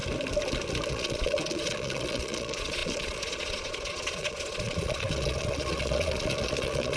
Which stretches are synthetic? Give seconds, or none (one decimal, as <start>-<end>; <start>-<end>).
0.9-7.0